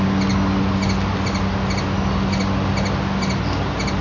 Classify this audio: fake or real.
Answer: real